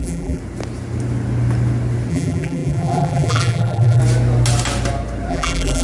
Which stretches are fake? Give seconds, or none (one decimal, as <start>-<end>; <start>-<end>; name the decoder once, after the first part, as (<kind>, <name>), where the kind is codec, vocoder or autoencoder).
0.0-0.4 (vocoder, BigVGAN v2); 2.1-4.0; 5.3-5.8